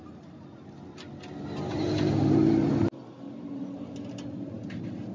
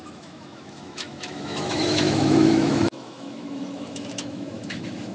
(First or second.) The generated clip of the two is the second